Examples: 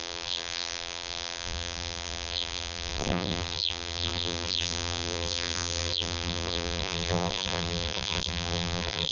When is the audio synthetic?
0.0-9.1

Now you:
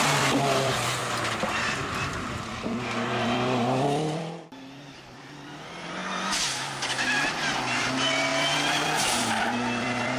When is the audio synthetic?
0.0-1.0; 1.8-6.0; 7.8-10.2

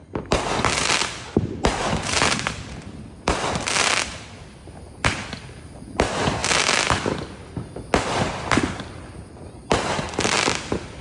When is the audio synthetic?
0.0-4.6; 5.4-6.4; 6.9-7.4; 9.5-11.0

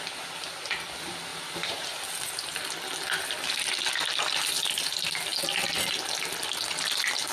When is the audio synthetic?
1.3-2.0